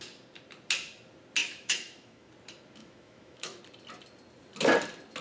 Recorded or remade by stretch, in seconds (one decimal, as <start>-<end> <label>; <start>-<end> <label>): 0.0-1.4 recorded; 1.4-2.3 remade; 2.3-2.8 recorded; 2.8-3.6 remade; 3.6-5.2 recorded